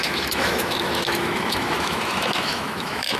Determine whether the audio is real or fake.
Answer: fake